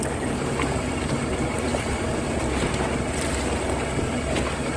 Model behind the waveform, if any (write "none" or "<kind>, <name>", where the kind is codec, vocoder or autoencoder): none